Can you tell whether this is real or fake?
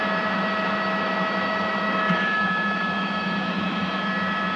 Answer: fake